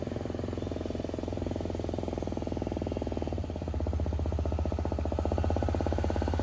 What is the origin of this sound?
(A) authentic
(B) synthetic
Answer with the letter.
A